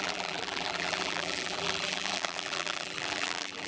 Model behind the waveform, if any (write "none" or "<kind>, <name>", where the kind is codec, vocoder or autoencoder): vocoder, BigVGAN v2